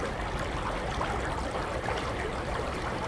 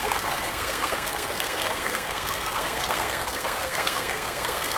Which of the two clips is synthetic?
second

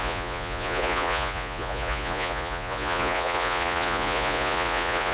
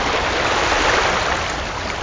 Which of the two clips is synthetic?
first